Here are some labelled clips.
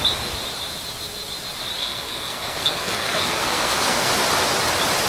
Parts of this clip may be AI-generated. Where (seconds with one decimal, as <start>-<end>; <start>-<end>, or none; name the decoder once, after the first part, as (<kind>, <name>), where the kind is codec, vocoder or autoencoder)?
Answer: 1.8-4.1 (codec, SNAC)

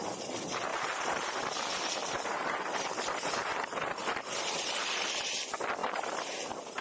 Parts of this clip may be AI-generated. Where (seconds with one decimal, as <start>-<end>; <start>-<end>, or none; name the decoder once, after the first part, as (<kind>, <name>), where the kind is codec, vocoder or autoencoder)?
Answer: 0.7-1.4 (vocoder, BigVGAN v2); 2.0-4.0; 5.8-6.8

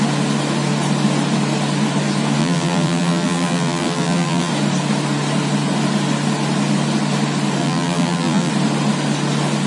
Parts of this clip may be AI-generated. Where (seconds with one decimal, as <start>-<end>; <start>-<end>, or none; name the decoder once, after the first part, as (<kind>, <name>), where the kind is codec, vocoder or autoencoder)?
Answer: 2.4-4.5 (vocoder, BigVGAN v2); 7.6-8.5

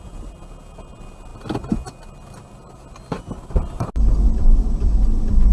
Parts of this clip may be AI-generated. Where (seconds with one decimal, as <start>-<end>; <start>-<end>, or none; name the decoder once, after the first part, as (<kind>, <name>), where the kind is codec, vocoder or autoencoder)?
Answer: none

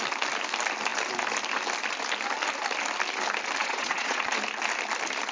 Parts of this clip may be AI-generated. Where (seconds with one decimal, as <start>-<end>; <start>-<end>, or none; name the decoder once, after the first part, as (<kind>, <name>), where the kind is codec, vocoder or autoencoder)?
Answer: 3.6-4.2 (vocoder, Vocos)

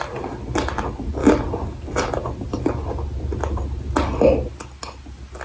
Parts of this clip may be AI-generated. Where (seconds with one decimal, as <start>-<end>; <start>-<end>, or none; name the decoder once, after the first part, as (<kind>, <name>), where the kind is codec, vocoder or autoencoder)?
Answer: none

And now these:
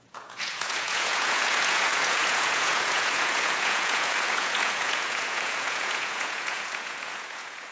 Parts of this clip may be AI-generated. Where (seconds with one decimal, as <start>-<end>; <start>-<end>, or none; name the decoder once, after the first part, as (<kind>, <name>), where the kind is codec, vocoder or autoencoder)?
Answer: 0.0-7.7 (vocoder, Vocos)